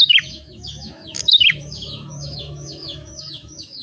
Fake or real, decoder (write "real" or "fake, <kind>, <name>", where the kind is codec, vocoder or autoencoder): fake, autoencoder, DAC-VAE